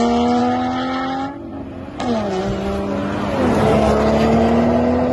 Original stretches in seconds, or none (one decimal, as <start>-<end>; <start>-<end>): 0.0-5.1